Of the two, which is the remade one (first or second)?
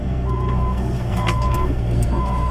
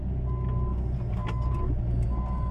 first